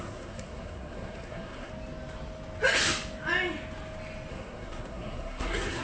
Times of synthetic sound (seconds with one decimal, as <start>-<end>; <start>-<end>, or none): 0.0-1.7; 4.3-5.8